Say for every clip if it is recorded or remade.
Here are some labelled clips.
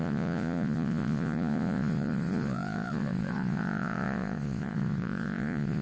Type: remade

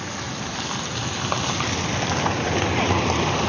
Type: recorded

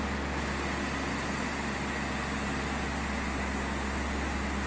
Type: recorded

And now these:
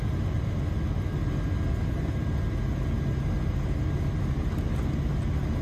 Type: recorded